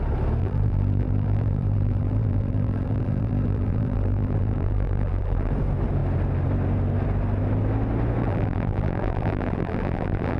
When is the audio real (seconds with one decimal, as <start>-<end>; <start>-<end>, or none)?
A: 0.0-0.4; 5.5-8.2